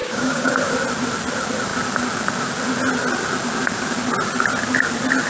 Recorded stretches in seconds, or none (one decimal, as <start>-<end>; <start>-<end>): 0.5-5.3